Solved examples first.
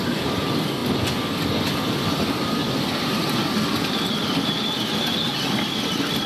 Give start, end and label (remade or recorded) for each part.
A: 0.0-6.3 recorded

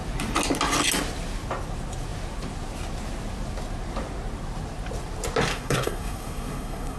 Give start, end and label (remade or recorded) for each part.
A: 0.0-5.5 recorded; 5.5-7.0 remade